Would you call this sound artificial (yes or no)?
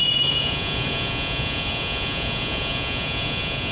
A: yes